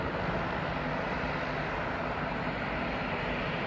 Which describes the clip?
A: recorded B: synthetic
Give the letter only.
A